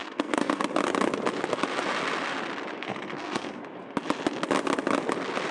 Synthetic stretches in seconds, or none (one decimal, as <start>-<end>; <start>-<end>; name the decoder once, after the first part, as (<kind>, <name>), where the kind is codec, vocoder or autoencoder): 0.0-0.6 (codec, SNAC); 2.8-3.6